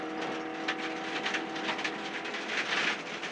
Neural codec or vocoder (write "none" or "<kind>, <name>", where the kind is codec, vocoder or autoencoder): none